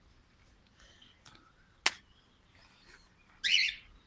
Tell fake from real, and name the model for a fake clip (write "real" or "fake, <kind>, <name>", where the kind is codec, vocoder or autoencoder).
real